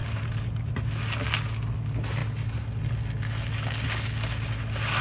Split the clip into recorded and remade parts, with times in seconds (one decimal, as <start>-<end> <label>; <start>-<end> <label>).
0.0-0.8 remade; 0.8-5.0 recorded